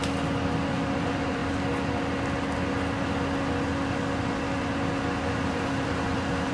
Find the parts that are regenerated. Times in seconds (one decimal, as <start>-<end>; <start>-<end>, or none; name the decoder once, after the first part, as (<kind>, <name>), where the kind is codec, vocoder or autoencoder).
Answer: 0.7-1.4 (vocoder, BigVGAN v2); 5.3-6.5